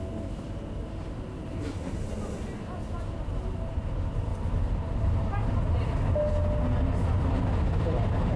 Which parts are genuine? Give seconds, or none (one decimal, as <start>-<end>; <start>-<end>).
0.0-8.4